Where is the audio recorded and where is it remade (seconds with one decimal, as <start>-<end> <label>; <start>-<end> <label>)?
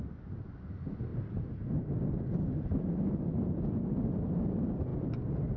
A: 0.0-5.6 recorded